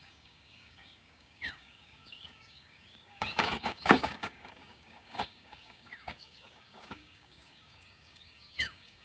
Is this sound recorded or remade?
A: remade